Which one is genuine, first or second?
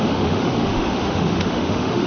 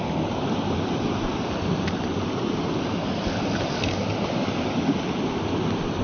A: second